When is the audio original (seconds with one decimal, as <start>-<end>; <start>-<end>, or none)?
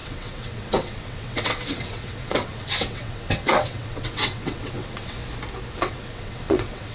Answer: 5.2-5.7